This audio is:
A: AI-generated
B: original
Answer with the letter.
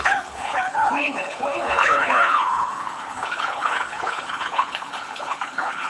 A